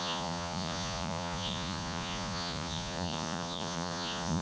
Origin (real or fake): fake